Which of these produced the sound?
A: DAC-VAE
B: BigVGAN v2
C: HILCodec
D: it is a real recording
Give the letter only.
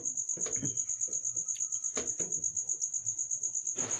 B